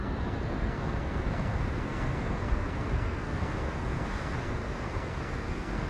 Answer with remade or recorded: remade